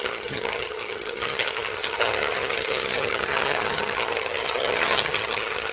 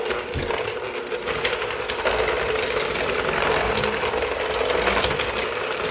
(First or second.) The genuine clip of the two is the second